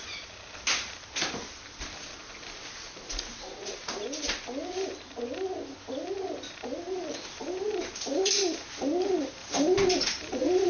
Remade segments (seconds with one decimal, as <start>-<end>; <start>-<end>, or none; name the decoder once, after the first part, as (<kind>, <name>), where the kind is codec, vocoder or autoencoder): 9.4-10.7 (vocoder, BigVGAN v2)